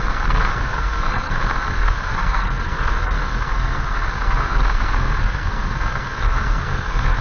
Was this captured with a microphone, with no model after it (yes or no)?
no